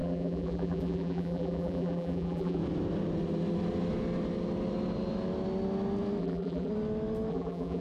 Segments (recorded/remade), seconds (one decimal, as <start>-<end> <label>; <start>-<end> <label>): 0.0-2.6 remade; 2.6-6.2 recorded; 6.2-6.7 remade; 6.7-7.3 recorded; 7.3-7.8 remade

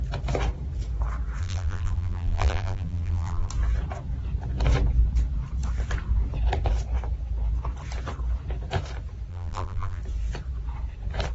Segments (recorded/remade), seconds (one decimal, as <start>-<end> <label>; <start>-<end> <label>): 0.0-1.4 recorded; 1.4-3.5 remade; 3.5-9.3 recorded; 9.3-10.0 remade; 10.0-11.3 recorded

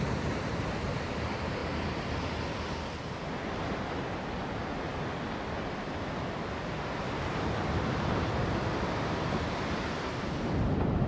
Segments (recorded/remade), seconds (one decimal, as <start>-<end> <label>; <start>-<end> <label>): 0.0-1.6 remade; 1.6-3.4 recorded; 3.4-4.9 remade; 4.9-6.6 recorded; 6.6-11.1 remade

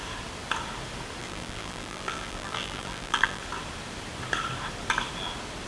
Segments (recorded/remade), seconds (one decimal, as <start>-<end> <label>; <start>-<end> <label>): 0.0-1.2 recorded; 1.2-3.4 remade; 3.4-5.7 recorded

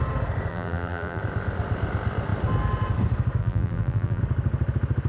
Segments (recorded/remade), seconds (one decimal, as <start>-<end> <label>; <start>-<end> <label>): 0.0-0.5 recorded; 0.5-1.2 remade; 1.2-3.4 recorded; 3.4-4.2 remade; 4.2-5.1 recorded